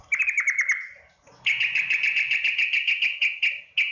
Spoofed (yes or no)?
no